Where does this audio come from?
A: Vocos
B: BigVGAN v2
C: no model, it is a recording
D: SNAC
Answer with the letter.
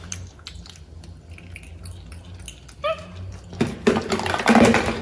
C